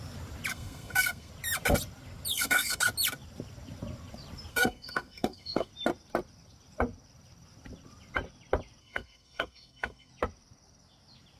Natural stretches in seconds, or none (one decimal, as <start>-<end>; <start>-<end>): 0.0-0.5; 1.3-2.3; 2.8-4.5; 5.7-8.8; 10.1-11.4